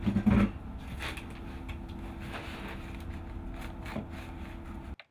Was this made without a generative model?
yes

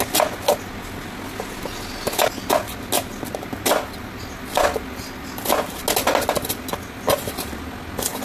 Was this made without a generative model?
yes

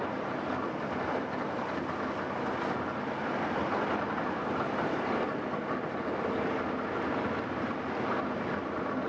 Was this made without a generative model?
yes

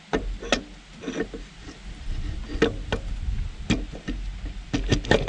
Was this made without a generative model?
yes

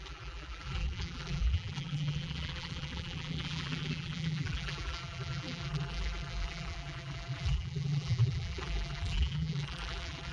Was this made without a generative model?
no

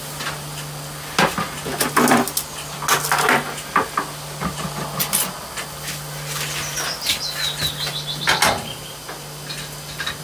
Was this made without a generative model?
yes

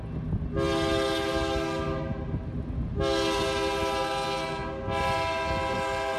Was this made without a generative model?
yes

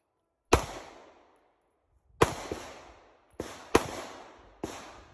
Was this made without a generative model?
yes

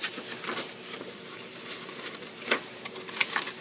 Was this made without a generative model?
no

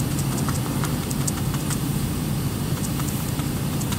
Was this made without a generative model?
no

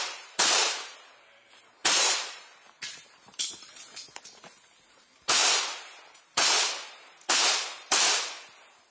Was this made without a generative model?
no